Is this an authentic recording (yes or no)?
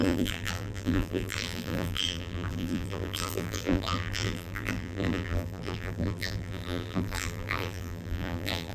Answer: no